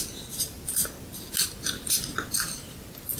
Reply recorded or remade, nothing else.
recorded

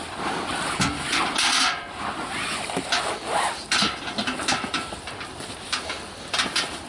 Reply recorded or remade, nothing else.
recorded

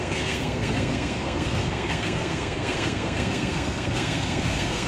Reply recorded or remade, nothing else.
remade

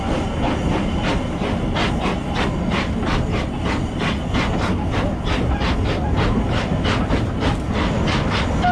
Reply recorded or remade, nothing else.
recorded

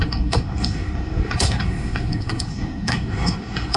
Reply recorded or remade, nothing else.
remade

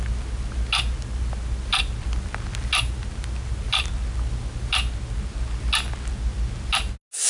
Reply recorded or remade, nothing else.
recorded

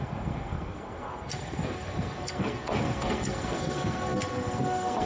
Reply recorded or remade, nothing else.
remade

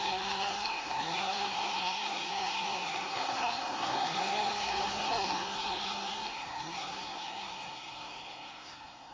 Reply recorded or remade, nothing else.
remade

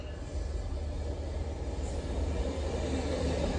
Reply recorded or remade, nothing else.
recorded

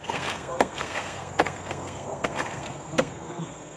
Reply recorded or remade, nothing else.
remade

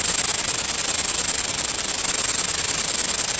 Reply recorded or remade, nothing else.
recorded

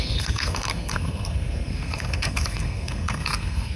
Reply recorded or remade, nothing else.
remade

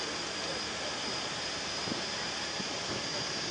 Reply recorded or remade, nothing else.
recorded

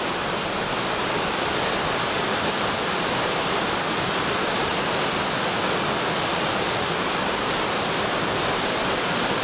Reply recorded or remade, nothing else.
recorded